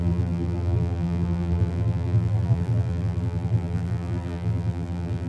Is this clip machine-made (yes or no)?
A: yes